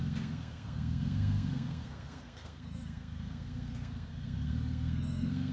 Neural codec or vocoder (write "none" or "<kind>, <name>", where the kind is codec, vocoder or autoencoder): codec, SNAC